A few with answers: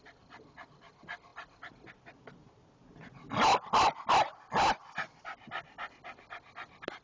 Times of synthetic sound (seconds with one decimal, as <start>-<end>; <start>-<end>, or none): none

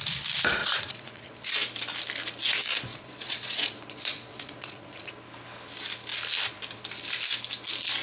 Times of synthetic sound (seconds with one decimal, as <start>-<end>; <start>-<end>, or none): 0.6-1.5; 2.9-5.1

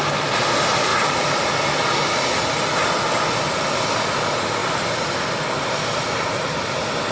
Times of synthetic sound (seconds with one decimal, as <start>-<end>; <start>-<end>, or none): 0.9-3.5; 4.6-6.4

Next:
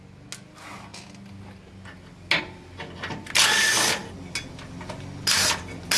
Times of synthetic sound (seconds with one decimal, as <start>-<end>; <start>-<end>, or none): none